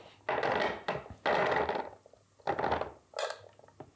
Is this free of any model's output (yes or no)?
yes